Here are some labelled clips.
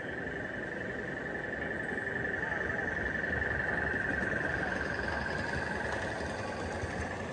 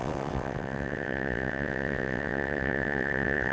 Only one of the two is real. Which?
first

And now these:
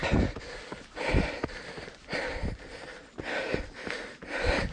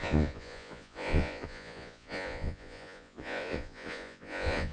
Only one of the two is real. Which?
first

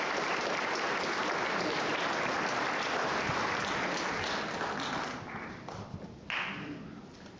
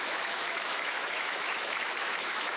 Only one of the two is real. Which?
first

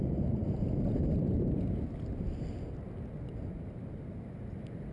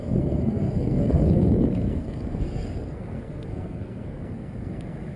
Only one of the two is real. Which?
first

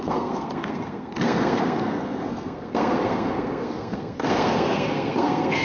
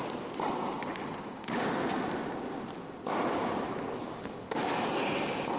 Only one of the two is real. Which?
second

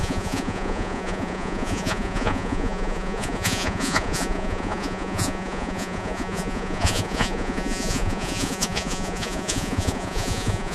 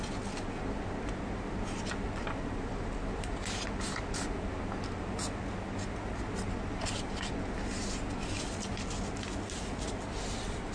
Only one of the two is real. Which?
second